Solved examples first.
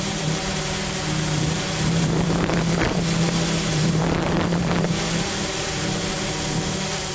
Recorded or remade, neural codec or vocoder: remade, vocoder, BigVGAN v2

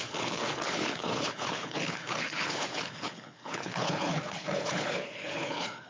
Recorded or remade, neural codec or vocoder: remade, codec, HILCodec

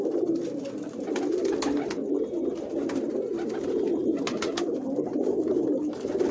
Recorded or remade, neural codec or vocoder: recorded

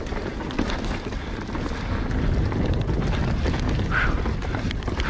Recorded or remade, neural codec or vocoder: recorded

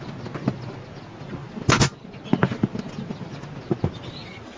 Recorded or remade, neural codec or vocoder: recorded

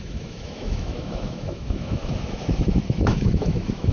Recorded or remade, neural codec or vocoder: remade, autoencoder, DAC-VAE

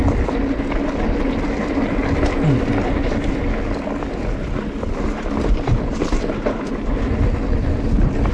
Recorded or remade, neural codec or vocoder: recorded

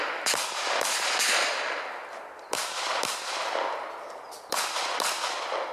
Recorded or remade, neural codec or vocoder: recorded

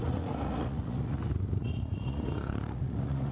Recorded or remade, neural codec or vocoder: remade, vocoder, Vocos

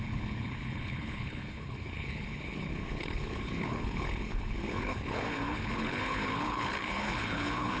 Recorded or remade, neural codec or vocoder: remade, codec, HILCodec